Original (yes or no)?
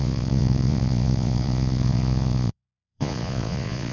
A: no